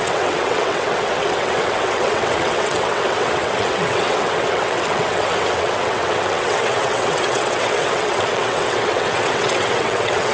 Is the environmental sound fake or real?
fake